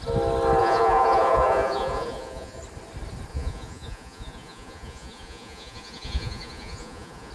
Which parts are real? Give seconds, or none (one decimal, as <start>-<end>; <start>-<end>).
0.0-0.6; 2.6-3.3